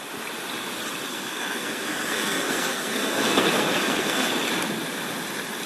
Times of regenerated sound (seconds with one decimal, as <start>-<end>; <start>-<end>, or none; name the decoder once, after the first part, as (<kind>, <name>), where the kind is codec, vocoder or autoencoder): 1.1-4.3 (codec, SNAC)